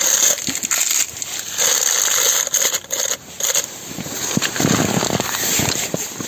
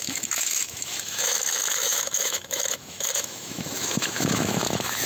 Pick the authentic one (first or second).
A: first